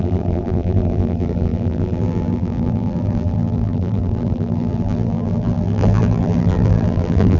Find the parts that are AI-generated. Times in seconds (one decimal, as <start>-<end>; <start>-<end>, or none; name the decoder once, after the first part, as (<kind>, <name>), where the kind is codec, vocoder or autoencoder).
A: 0.0-7.4 (vocoder, BigVGAN v2)